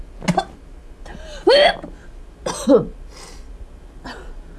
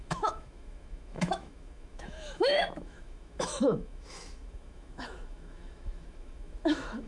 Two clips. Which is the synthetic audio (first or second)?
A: second